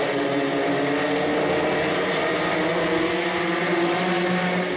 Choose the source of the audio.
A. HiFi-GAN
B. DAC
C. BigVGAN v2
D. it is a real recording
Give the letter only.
D